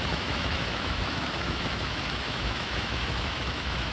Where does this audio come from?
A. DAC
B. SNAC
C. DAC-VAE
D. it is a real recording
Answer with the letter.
C